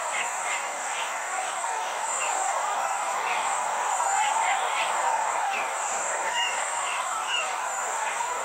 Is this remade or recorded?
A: remade